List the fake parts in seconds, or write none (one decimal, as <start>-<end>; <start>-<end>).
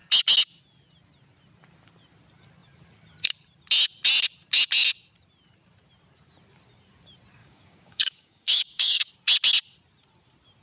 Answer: 7.4-9.1